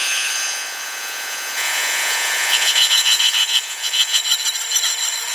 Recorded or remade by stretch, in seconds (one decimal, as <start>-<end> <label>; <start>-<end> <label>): 0.0-4.2 remade; 4.2-5.3 recorded